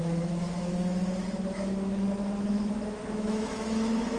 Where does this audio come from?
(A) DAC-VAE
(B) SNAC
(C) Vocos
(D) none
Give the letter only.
A